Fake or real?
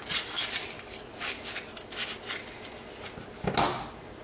real